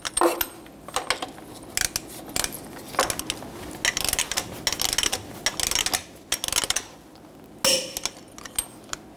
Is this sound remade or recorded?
recorded